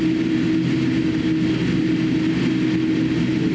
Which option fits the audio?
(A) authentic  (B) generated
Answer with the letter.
A